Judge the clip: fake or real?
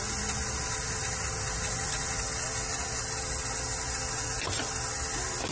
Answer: real